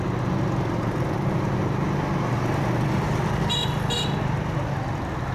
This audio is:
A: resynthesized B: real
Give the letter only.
B